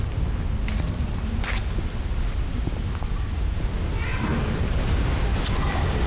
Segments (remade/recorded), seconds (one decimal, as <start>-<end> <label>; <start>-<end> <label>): 0.0-6.1 recorded